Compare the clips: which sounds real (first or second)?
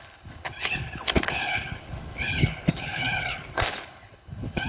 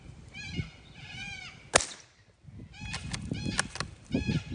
second